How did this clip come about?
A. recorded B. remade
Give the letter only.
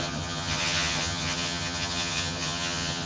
B